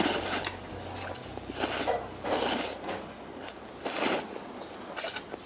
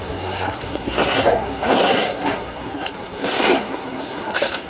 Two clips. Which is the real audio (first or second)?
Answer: first